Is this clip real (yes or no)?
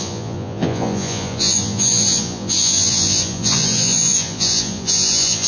no